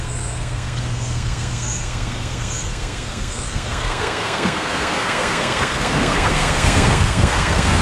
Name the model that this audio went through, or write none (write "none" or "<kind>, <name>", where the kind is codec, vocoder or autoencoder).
codec, SNAC